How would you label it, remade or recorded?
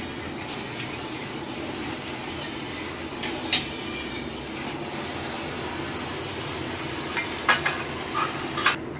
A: recorded